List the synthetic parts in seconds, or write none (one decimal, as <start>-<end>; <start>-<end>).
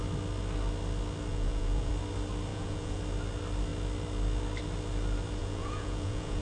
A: 1.3-1.9; 2.5-3.0; 5.4-6.4